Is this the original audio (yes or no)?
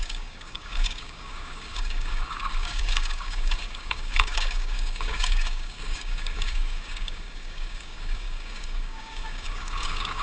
no